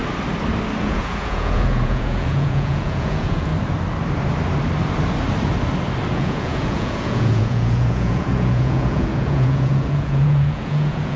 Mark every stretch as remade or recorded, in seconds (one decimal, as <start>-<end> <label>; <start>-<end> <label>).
0.0-0.8 recorded; 0.8-3.5 remade; 3.5-6.1 recorded; 6.1-11.2 remade